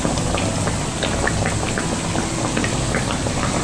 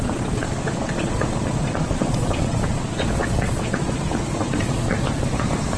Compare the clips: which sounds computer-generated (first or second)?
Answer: second